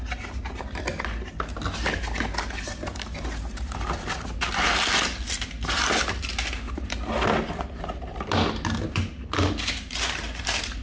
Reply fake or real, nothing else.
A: real